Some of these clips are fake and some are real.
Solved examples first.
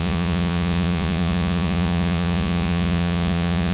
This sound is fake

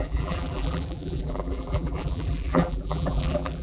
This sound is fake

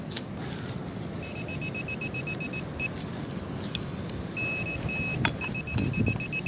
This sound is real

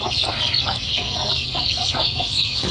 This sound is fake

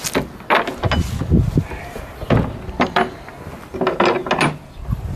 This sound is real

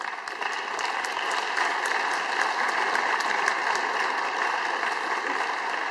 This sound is real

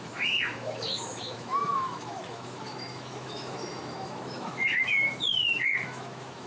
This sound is fake